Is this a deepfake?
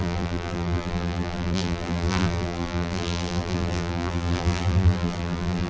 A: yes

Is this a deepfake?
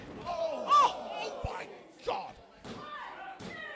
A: no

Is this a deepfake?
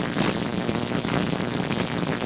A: yes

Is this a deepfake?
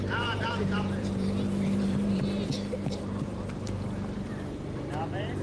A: yes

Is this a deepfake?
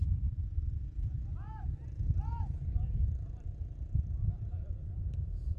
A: no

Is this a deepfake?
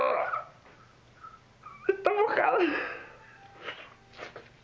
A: no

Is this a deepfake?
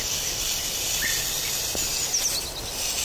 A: no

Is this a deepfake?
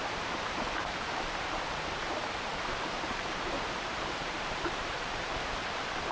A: yes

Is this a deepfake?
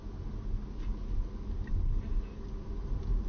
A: no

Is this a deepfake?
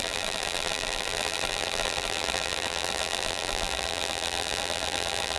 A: yes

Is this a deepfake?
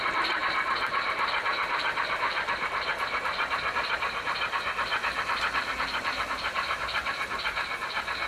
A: yes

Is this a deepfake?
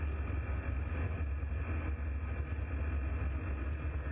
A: no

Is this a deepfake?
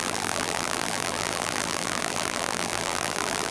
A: yes